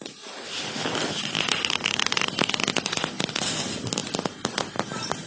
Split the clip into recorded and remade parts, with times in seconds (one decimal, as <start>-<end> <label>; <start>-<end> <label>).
0.0-5.3 recorded

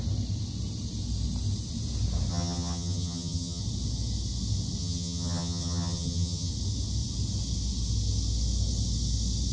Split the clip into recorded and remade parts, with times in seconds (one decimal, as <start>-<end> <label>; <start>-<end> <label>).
0.0-2.3 recorded; 2.3-3.6 remade; 3.6-4.8 recorded; 4.8-6.5 remade; 6.5-9.5 recorded

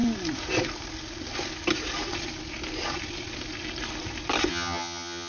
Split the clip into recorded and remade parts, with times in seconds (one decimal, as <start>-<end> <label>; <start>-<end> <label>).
0.0-4.5 recorded; 4.5-5.3 remade

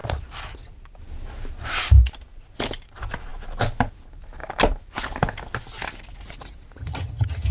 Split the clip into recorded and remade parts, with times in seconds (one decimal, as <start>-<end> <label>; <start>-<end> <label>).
0.0-6.8 recorded; 6.8-7.5 remade

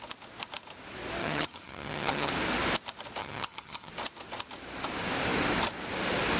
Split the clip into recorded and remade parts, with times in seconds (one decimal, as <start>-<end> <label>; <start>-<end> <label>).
0.0-1.2 recorded; 1.2-2.3 remade; 2.3-3.2 recorded; 3.2-3.9 remade; 3.9-6.4 recorded

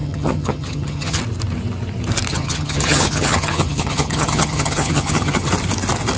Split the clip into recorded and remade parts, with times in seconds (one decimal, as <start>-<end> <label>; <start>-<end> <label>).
0.0-1.2 remade; 1.2-2.3 recorded; 2.3-5.5 remade; 5.5-6.2 recorded

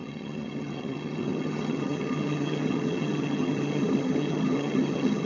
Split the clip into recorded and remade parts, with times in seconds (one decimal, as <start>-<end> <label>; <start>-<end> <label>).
0.0-5.3 remade

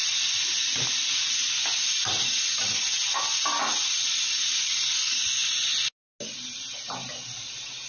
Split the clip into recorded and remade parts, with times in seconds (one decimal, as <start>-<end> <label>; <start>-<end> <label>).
0.0-7.9 recorded